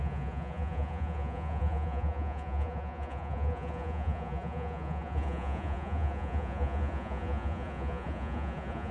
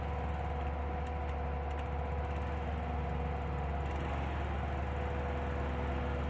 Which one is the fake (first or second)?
first